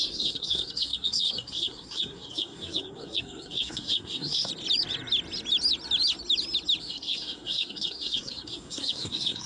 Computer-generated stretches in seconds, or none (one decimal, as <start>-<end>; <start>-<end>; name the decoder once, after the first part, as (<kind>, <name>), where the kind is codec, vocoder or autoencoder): 0.0-4.5 (codec, SNAC); 6.8-9.5

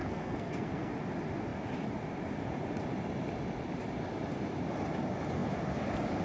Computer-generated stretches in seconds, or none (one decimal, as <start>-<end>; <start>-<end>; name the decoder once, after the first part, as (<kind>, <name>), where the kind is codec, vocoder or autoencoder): 0.0-0.9 (codec, SNAC)